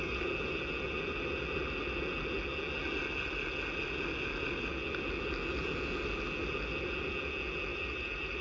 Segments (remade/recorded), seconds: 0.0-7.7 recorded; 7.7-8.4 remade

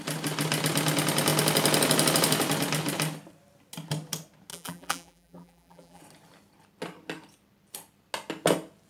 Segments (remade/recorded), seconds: 0.0-4.5 recorded; 4.5-6.0 remade; 6.0-8.9 recorded

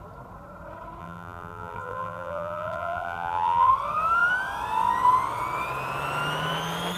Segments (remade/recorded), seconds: 0.0-1.0 recorded; 1.0-3.7 remade; 3.7-7.0 recorded